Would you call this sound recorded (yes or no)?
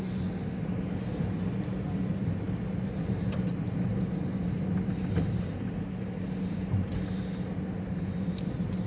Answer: yes